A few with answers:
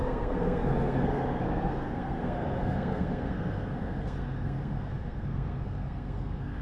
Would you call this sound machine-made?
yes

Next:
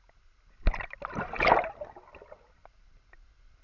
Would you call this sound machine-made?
no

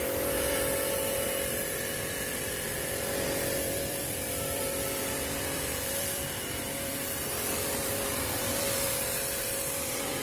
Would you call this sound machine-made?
yes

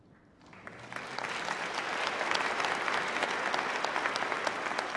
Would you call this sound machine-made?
no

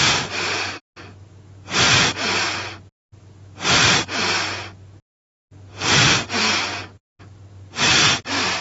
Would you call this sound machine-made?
no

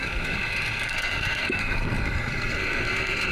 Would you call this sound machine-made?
yes